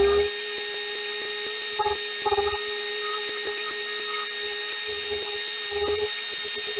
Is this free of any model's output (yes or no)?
yes